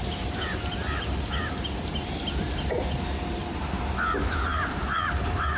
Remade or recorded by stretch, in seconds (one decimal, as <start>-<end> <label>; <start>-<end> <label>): 0.0-4.5 recorded; 4.5-5.6 remade